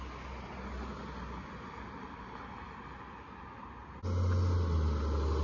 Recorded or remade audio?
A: recorded